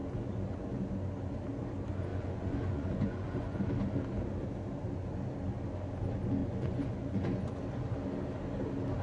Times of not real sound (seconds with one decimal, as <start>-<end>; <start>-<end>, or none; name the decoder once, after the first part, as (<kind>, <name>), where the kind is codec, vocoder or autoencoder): 0.0-0.8 (vocoder, Vocos); 2.1-3.6; 6.4-7.6